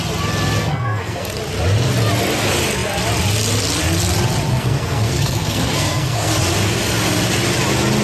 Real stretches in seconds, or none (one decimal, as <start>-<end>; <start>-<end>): 0.0-0.6; 1.4-4.5; 6.4-8.0